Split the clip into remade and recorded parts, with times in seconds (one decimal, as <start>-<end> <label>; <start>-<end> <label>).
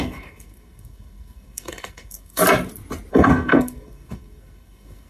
0.0-2.4 remade; 2.4-3.1 recorded; 3.1-5.1 remade